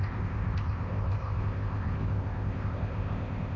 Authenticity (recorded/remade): remade